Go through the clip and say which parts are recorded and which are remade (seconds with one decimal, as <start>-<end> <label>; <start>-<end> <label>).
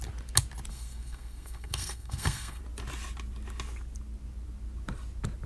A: 0.0-0.7 recorded; 0.7-2.6 remade; 2.6-5.5 recorded